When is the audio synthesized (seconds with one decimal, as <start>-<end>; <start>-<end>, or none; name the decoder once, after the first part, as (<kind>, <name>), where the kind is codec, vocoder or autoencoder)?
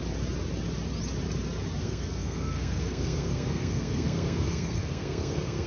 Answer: 1.8-5.7 (codec, SNAC)